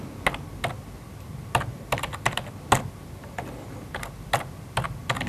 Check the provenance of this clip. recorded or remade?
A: recorded